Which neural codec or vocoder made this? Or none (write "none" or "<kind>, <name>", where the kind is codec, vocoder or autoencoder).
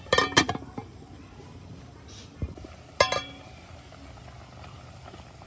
none